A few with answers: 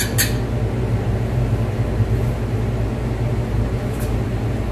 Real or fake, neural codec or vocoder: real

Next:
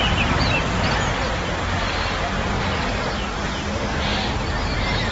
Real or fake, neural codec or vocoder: real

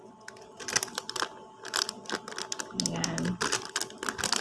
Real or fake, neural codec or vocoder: real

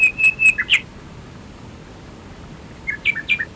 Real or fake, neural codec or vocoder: real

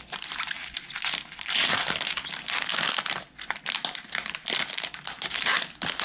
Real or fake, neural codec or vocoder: real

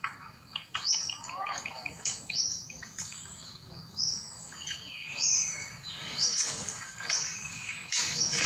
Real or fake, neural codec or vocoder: fake, codec, DAC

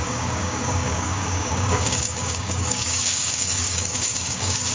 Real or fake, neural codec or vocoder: fake, codec, DAC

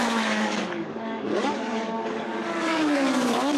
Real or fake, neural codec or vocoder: fake, codec, DAC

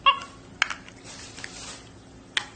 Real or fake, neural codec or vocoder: real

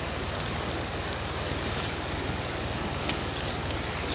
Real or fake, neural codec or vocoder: fake, codec, DAC